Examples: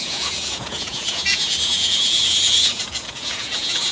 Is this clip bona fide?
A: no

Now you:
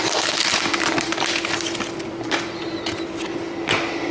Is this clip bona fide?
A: yes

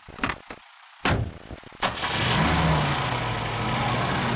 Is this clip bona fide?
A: yes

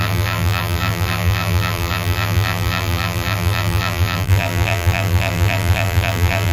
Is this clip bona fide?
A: no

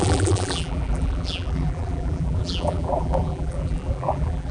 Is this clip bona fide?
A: no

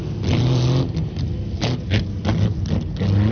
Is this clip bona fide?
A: yes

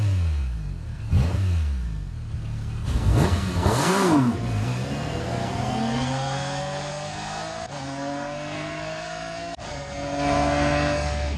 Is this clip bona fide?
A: no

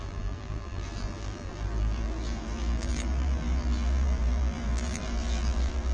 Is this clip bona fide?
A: no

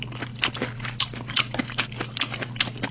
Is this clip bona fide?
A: yes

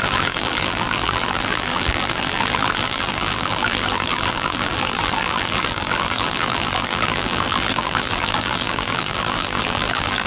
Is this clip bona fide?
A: no